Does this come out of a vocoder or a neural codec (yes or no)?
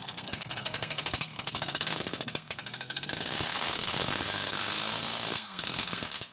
yes